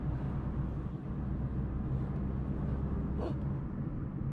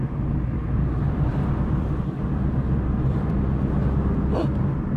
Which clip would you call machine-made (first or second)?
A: second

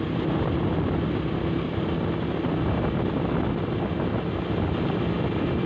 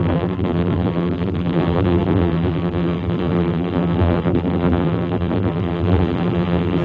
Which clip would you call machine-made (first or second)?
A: second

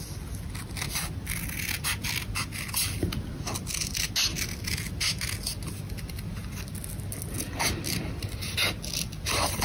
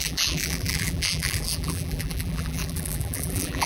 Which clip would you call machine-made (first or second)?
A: second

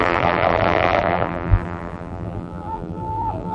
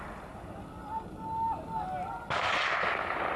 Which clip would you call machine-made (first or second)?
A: first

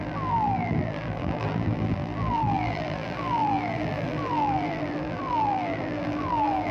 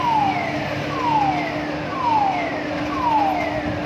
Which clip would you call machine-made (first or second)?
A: first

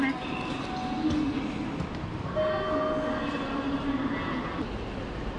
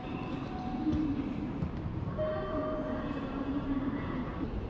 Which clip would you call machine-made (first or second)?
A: second